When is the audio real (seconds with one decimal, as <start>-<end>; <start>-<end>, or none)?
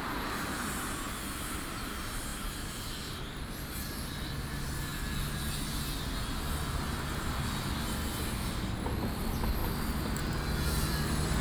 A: 0.0-2.3; 4.5-9.6; 10.2-11.4